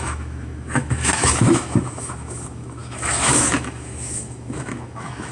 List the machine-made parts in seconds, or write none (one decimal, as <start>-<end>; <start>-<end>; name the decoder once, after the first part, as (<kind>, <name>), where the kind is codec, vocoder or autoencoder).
0.0-5.3 (autoencoder, DAC-VAE)